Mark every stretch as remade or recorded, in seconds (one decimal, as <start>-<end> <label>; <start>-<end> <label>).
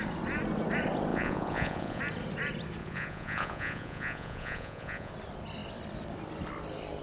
0.0-1.1 recorded; 1.1-2.0 remade; 2.0-2.8 recorded; 2.8-5.1 remade; 5.1-7.0 recorded